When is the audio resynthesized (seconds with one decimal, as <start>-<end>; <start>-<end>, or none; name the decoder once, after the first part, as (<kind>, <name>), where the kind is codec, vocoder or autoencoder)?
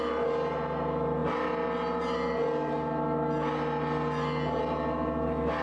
none